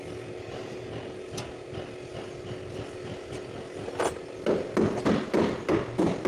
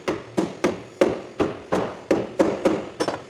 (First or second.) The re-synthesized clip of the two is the second